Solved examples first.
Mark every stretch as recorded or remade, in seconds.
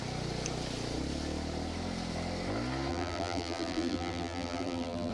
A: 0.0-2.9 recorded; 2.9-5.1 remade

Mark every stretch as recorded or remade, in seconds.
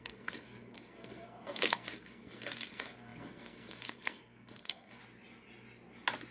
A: 0.0-5.0 remade; 5.0-6.3 recorded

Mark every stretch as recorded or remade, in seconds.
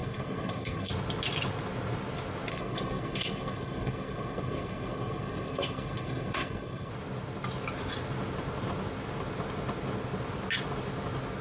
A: 0.0-0.9 remade; 0.9-2.5 recorded; 2.5-6.9 remade; 6.9-11.4 recorded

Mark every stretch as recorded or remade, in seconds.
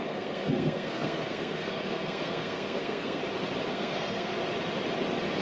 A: 0.0-3.2 remade; 3.2-3.7 recorded; 3.7-4.4 remade; 4.4-5.4 recorded